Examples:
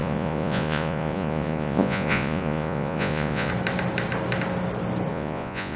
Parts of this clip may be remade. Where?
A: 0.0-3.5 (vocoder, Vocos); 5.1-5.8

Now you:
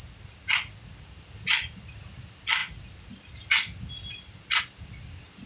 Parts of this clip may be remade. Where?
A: none

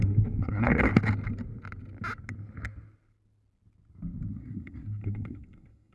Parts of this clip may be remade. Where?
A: 0.0-0.9 (codec, SNAC); 4.3-5.9

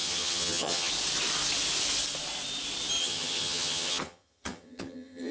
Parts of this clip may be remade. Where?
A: 0.0-0.9 (vocoder, HiFi-GAN); 3.0-5.3

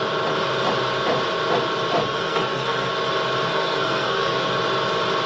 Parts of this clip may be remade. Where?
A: 2.0-2.9 (codec, SNAC); 3.5-4.5

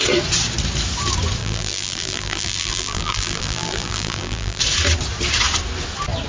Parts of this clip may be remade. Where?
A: 1.4-4.6 (vocoder, BigVGAN v2)

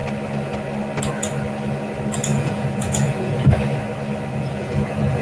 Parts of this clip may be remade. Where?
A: 2.3-3.5 (vocoder, Vocos); 4.3-5.2

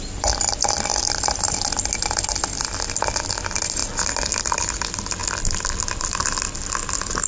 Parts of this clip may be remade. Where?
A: none